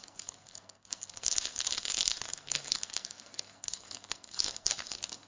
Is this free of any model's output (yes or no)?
no